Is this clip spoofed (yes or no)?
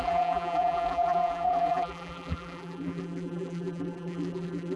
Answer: yes